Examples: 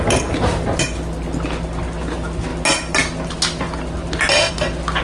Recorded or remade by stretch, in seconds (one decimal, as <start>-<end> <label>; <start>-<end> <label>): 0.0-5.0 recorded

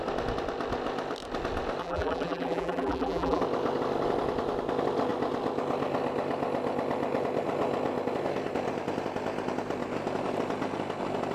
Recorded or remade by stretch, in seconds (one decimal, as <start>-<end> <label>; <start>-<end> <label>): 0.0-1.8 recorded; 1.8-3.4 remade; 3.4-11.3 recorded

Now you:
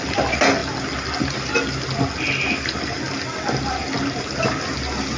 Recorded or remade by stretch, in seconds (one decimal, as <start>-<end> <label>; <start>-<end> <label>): 0.0-5.2 recorded